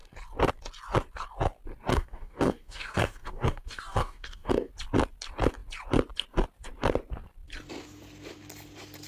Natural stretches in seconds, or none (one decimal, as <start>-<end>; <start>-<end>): 0.0-1.9; 4.7-9.1